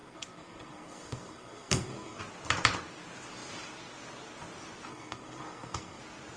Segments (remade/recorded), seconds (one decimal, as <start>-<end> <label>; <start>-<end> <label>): 0.0-2.2 remade; 2.2-4.9 recorded; 4.9-6.0 remade; 6.0-6.4 recorded

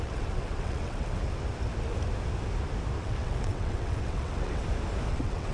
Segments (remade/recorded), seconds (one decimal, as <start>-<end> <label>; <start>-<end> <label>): 0.0-1.2 remade; 1.2-3.0 recorded; 3.0-4.6 remade; 4.6-5.1 recorded; 5.1-5.5 remade

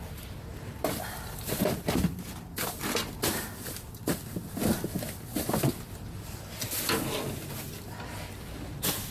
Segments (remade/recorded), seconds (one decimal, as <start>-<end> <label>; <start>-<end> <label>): 0.0-0.5 recorded; 0.5-2.8 remade; 2.8-9.1 recorded

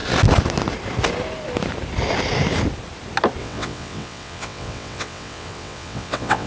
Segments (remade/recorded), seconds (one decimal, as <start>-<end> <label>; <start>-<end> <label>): 0.0-3.4 recorded; 3.4-6.5 remade

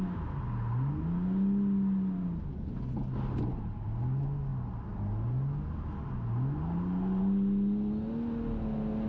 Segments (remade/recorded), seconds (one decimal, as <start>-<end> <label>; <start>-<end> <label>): 0.0-9.1 recorded